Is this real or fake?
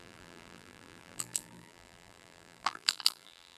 fake